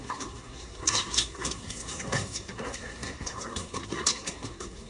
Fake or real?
fake